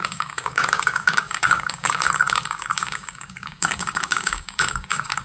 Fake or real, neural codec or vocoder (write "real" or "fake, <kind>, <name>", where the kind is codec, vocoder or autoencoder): fake, codec, DAC